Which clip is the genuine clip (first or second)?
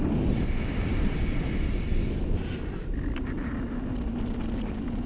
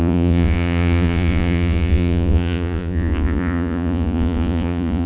first